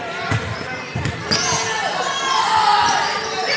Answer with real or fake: real